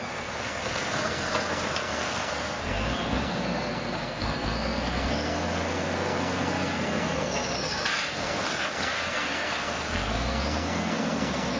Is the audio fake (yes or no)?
yes